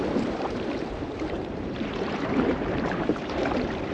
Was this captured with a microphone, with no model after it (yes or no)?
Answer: no